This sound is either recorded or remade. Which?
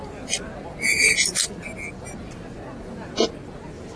recorded